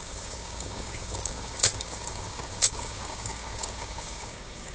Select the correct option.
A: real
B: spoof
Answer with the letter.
B